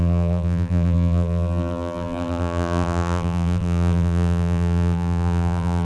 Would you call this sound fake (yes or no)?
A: yes